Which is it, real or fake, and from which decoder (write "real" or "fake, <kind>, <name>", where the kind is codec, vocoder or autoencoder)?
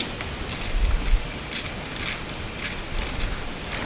real